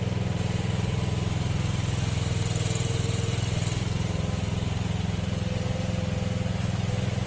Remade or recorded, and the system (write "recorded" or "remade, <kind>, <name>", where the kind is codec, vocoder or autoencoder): recorded